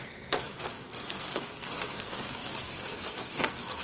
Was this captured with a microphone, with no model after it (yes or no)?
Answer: no